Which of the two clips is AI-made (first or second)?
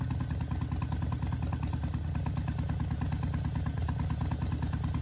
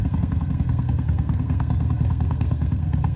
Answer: second